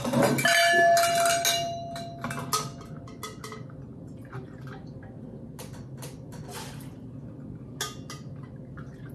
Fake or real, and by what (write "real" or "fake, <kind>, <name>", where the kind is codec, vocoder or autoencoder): real